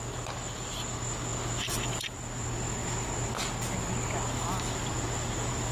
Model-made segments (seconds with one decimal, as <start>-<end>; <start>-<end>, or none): none

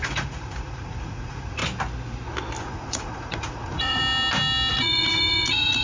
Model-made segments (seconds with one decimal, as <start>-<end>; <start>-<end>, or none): 0.0-1.6; 2.6-4.0; 4.7-5.8